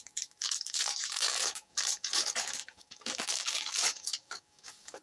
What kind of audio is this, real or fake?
fake